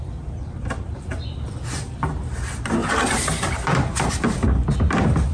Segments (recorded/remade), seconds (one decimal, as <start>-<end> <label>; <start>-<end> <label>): 0.0-2.8 recorded; 2.8-4.1 remade; 4.1-5.3 recorded